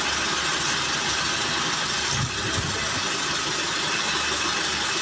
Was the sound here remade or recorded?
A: recorded